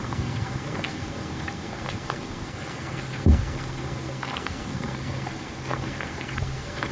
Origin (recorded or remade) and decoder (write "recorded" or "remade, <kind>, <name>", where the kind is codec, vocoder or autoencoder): remade, codec, SNAC